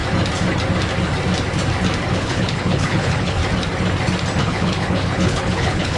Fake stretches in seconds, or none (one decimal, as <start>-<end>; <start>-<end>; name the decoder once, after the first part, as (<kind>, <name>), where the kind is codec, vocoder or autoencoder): 2.1-3.4 (codec, HILCodec); 4.4-6.0